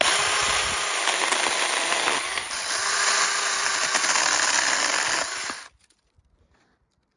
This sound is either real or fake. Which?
real